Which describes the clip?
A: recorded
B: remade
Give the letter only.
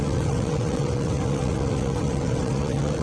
B